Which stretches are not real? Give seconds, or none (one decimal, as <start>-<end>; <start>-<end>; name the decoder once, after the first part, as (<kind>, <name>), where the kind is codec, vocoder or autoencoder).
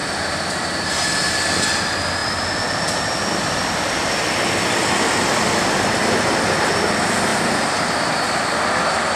0.0-1.7 (vocoder, BigVGAN v2); 2.2-4.1; 7.3-8.5